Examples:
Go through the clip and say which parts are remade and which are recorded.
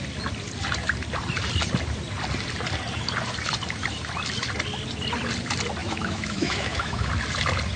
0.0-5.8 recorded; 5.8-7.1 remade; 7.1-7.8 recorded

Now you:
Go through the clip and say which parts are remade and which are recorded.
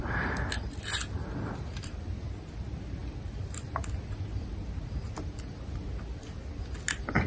0.0-7.3 recorded